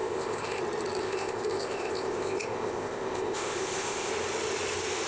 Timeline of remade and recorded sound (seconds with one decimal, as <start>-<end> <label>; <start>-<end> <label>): 0.0-0.6 remade; 0.6-1.0 recorded; 1.0-4.1 remade; 4.1-5.1 recorded

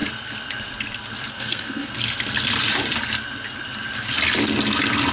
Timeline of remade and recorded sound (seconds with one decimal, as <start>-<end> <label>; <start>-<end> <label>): 0.0-1.3 recorded; 1.3-1.9 remade; 1.9-5.1 recorded

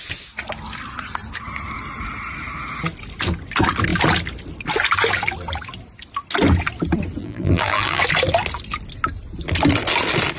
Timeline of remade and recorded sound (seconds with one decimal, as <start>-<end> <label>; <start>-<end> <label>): 0.0-7.2 recorded; 7.2-8.0 remade; 8.0-10.4 recorded

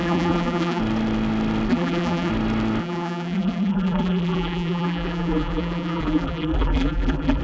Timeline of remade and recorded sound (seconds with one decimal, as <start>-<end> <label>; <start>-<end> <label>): 0.0-0.8 remade; 0.8-1.7 recorded; 1.7-2.3 remade; 2.3-2.8 recorded; 2.8-7.4 remade

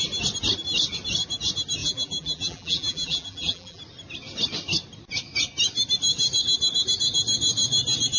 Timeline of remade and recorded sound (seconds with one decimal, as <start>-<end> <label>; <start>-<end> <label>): 0.0-1.8 recorded; 1.8-3.8 remade; 3.8-8.2 recorded